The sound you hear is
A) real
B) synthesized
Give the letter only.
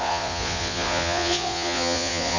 B